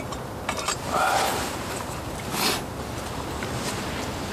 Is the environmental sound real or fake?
real